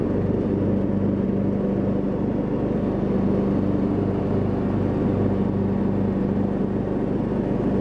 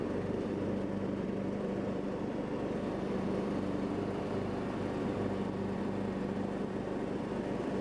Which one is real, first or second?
first